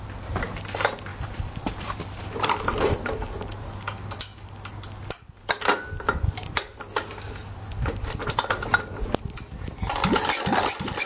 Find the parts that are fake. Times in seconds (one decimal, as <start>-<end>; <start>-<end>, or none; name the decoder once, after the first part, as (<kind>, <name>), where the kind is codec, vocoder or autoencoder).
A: 1.1-3.6 (vocoder, BigVGAN v2)